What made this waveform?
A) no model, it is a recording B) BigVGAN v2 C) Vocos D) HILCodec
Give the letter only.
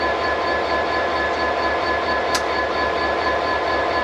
B